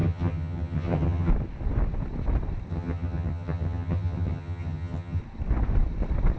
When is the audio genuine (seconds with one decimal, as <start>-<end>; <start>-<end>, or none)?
1.3-2.7; 5.2-6.4